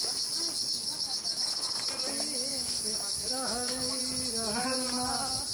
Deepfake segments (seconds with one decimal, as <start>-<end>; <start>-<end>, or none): 0.6-1.5; 2.5-4.0

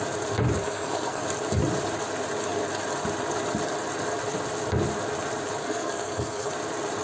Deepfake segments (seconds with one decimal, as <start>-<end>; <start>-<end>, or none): 0.6-1.2; 5.6-6.5